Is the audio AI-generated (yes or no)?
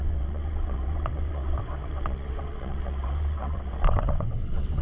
yes